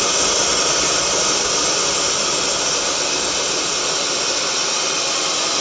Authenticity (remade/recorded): recorded